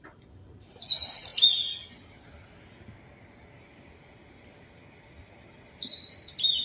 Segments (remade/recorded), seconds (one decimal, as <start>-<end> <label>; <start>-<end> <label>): 0.0-6.6 recorded